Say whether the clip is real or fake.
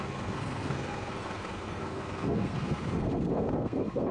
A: fake